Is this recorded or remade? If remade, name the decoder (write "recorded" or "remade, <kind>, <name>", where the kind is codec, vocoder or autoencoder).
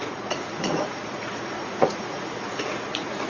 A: remade, vocoder, Vocos